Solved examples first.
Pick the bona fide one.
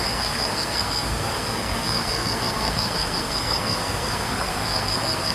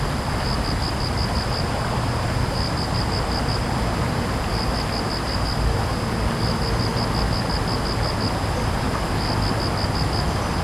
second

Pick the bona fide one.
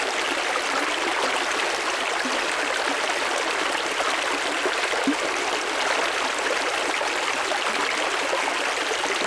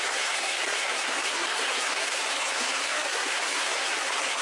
first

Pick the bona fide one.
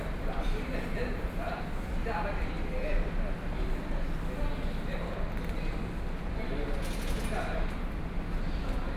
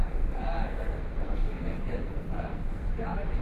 first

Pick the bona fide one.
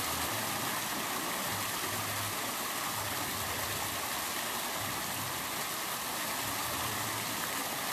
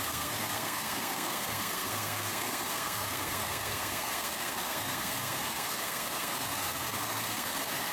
first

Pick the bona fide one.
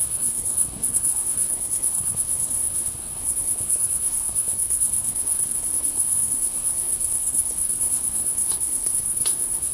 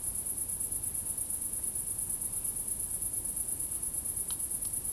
second